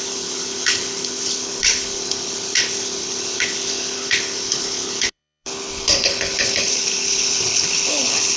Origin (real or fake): fake